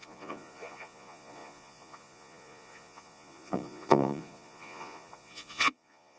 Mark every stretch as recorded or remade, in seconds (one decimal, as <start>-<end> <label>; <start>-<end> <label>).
0.0-6.2 remade